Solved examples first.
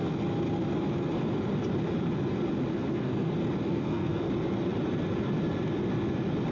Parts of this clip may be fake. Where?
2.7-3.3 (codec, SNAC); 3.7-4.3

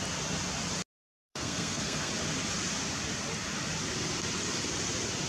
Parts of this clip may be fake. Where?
1.3-2.1 (codec, SNAC)